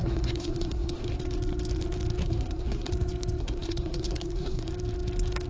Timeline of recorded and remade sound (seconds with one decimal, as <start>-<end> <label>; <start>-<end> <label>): 0.0-1.2 remade; 1.2-2.2 recorded; 2.2-2.9 remade; 2.9-3.4 recorded; 3.4-4.7 remade; 4.7-5.5 recorded